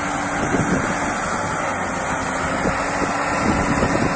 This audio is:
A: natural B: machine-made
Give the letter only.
A